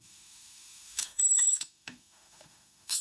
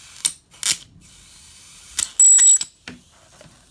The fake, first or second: first